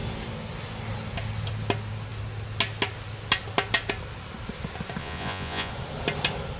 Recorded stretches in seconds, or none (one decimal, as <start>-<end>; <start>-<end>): 0.0-5.0; 5.7-6.6